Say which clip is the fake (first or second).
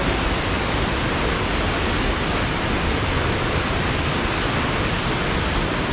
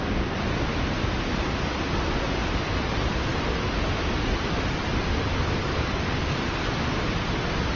second